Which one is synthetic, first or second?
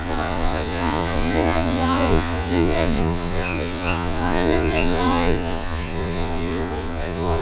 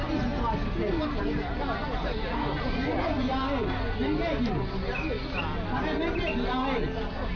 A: first